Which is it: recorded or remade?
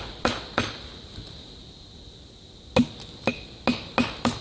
recorded